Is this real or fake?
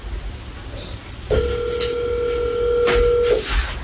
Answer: real